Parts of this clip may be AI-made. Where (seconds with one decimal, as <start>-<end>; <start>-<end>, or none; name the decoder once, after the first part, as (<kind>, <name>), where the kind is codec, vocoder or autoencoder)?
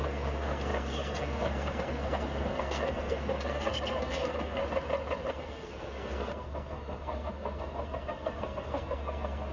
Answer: 0.0-4.6 (codec, SNAC); 5.3-9.5